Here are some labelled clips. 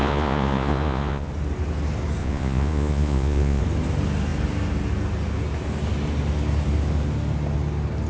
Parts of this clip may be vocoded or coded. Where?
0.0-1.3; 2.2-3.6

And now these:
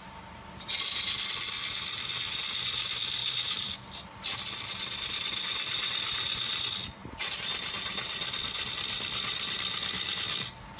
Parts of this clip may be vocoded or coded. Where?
3.2-4.4

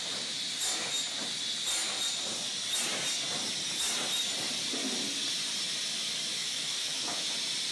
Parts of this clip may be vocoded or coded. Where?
6.4-7.3

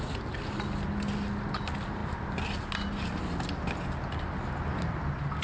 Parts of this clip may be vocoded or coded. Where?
none

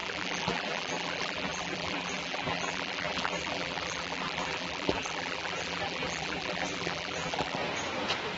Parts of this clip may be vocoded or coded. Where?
0.0-7.6

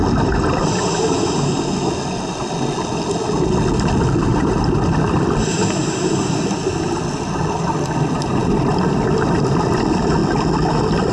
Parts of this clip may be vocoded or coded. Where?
none